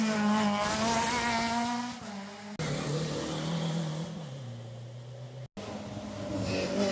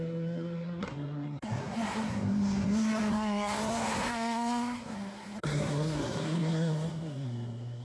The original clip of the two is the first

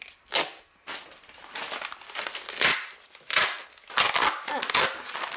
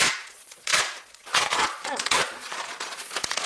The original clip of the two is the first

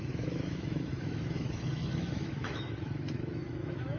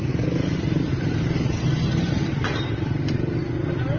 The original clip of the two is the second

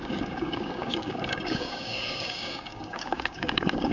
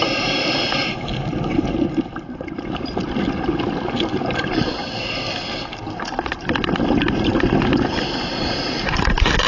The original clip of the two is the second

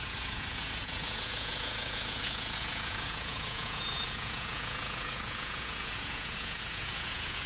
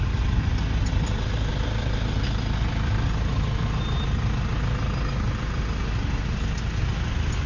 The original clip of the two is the second